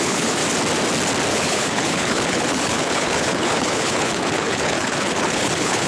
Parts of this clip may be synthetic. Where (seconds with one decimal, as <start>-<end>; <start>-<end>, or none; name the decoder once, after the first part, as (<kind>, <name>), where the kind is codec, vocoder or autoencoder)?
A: 0.0-0.4 (codec, HILCodec); 1.3-5.9